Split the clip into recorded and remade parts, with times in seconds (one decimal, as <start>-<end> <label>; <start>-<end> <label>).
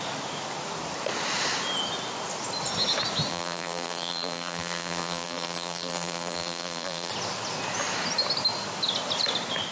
0.0-3.3 recorded; 3.3-7.1 remade; 7.1-9.7 recorded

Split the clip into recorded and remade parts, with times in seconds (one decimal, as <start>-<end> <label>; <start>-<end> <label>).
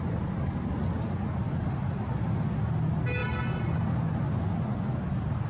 0.0-3.2 recorded; 3.2-3.8 remade; 3.8-5.5 recorded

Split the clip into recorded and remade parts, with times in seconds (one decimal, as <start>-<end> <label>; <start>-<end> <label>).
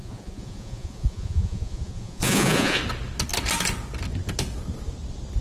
0.0-2.8 remade; 2.8-5.4 recorded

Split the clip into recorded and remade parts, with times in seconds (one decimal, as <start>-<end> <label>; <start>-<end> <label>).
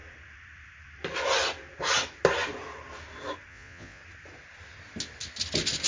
0.0-3.5 recorded; 3.5-4.0 remade; 4.0-5.9 recorded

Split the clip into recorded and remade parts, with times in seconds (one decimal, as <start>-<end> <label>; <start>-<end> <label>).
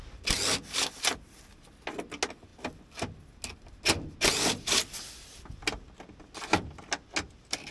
0.0-7.7 recorded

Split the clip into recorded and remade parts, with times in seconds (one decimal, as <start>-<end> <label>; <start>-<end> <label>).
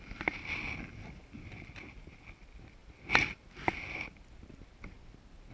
0.0-5.5 recorded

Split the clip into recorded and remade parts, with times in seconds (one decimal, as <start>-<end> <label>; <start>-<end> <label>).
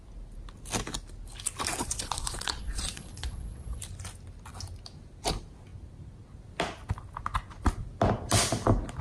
0.0-1.8 recorded; 1.8-3.8 remade; 3.8-9.0 recorded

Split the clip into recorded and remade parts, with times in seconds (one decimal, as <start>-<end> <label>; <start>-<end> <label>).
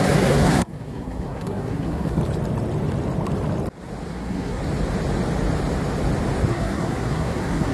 0.0-2.2 remade; 2.2-4.1 recorded; 4.1-4.6 remade; 4.6-6.5 recorded; 6.5-7.7 remade